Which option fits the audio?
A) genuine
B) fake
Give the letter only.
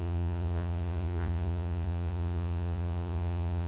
B